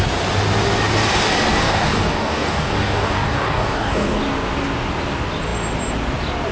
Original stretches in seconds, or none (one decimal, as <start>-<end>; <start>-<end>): 0.0-1.6; 4.2-6.5